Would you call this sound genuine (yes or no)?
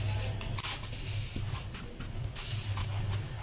yes